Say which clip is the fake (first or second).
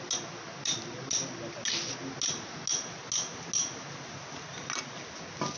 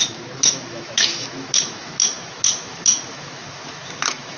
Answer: second